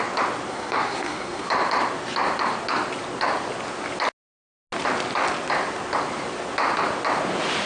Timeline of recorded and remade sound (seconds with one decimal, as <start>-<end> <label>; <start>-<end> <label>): 0.0-0.5 recorded; 0.5-1.5 remade; 1.5-7.7 recorded